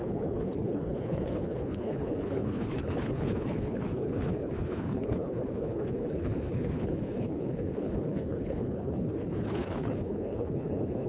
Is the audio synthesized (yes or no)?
yes